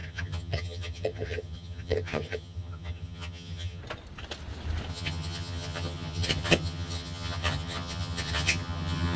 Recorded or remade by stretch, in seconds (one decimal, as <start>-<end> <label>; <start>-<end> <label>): 0.0-3.8 remade; 3.8-4.9 recorded; 4.9-9.2 remade